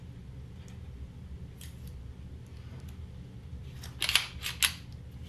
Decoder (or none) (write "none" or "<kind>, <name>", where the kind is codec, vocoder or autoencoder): none